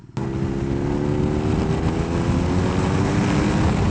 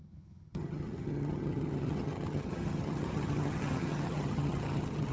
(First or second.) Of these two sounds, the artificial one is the second